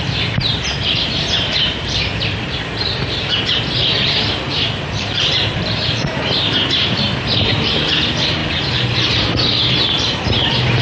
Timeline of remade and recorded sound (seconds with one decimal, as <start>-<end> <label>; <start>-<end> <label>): 0.0-10.8 remade